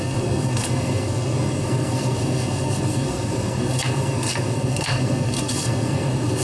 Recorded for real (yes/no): no